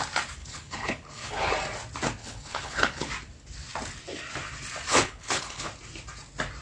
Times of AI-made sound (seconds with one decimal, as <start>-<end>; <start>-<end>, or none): 0.4-1.5; 2.2-3.1; 4.9-5.7